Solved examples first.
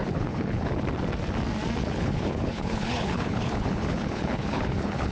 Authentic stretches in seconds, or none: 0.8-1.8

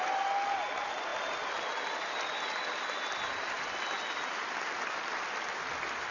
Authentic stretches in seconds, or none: 0.0-6.1